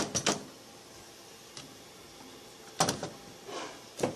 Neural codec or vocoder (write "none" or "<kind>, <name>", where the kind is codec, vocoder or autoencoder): none